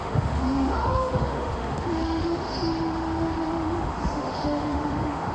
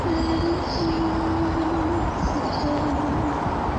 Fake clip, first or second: first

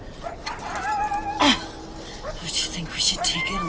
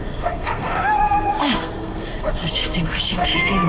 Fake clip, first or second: second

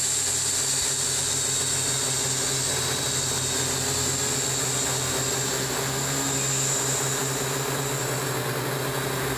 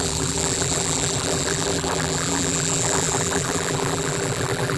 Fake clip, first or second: second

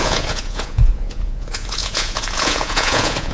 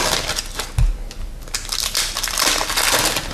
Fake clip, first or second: first